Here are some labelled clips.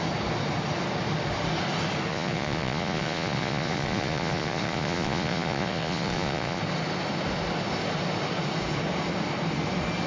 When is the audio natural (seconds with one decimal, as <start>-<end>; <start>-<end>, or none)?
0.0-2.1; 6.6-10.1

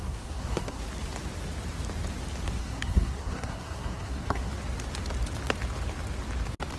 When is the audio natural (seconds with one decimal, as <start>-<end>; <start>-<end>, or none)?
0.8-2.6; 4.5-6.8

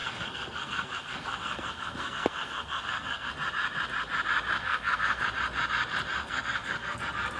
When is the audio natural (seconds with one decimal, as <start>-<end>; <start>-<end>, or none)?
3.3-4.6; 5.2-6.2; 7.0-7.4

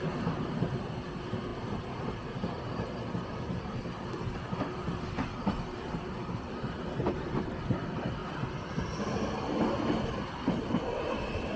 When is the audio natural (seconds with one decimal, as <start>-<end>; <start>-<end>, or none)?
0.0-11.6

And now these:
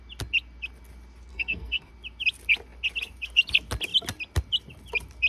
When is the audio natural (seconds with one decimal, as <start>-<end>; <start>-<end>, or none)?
0.0-1.3; 1.9-5.3